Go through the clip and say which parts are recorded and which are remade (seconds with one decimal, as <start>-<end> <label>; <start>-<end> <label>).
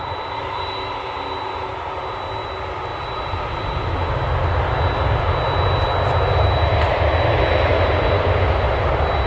0.0-9.3 recorded